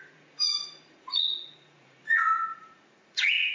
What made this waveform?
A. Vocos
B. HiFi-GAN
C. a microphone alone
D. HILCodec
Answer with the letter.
A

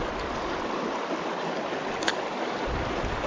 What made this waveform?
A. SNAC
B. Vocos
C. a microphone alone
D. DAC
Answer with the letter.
C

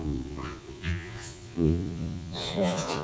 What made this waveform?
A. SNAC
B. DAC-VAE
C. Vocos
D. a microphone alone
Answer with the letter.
C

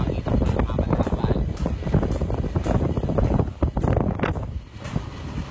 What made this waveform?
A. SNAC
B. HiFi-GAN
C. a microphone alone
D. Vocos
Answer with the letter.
C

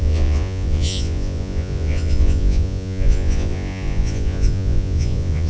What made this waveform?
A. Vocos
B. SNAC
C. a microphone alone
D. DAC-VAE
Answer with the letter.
A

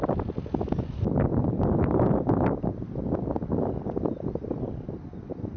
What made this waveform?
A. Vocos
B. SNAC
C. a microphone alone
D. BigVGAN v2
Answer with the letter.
C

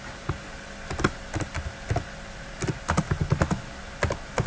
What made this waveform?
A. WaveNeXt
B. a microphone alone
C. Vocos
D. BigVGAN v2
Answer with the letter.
B